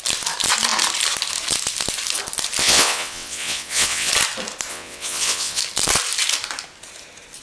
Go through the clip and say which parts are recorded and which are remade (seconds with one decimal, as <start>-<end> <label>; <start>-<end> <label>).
0.0-2.6 recorded; 2.6-4.1 remade; 4.1-4.7 recorded; 4.7-5.6 remade; 5.6-7.4 recorded